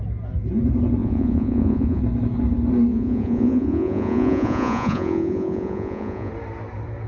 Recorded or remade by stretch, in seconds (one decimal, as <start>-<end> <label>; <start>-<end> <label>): 0.0-1.0 recorded; 1.0-2.0 remade; 2.0-2.9 recorded; 2.9-6.3 remade; 6.3-7.1 recorded